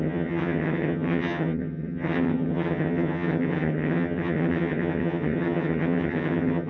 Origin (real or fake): fake